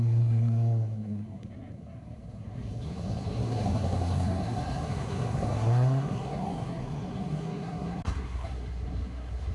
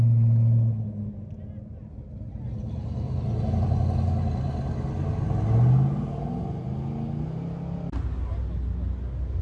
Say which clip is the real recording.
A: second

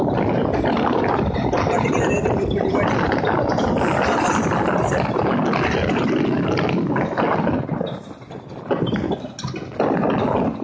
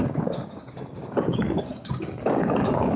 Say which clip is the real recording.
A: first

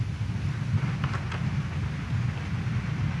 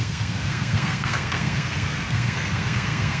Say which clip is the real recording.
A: first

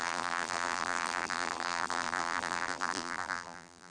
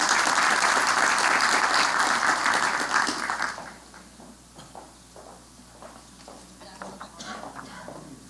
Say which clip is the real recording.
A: second